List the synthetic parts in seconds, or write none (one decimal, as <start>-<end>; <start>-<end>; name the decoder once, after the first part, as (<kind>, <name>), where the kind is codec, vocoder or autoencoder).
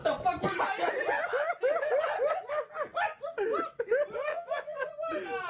4.3-4.9 (vocoder, Vocos)